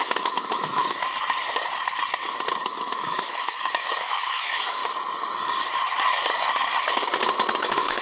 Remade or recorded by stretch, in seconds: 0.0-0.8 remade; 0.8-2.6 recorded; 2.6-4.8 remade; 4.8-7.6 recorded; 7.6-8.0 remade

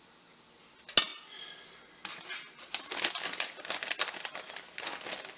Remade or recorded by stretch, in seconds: 0.0-5.4 recorded

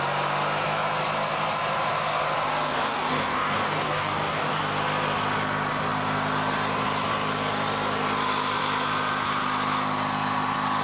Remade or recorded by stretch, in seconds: 0.0-2.7 recorded; 2.7-4.6 remade; 4.6-10.8 recorded

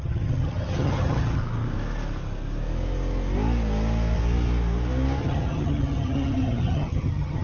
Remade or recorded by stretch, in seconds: 0.0-1.4 remade; 1.4-5.2 recorded; 5.2-7.4 remade

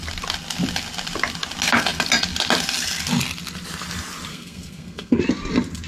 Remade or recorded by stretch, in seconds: 0.0-4.3 recorded; 4.3-5.2 remade; 5.2-5.9 recorded

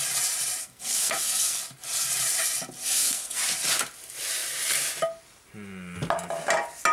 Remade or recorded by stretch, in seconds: 0.0-0.6 recorded; 0.6-1.6 remade; 1.6-2.8 recorded; 2.8-3.4 remade; 3.4-6.9 recorded